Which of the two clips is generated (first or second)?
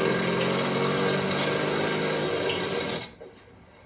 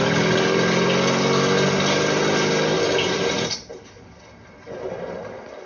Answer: first